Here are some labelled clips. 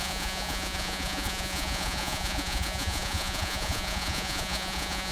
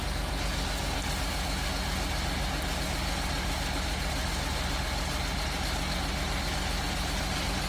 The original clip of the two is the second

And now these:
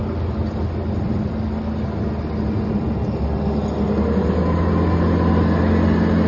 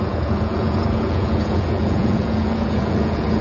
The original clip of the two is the first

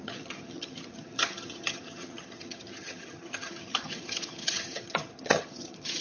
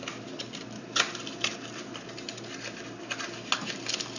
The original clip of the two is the second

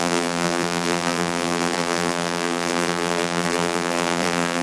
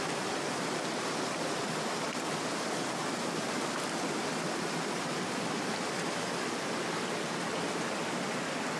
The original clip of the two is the second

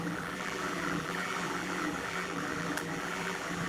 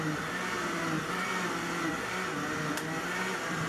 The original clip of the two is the second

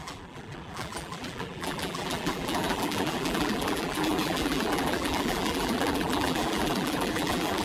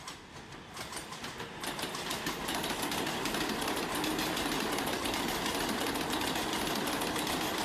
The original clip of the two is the second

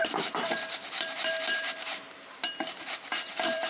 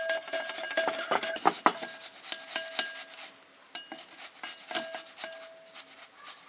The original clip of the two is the second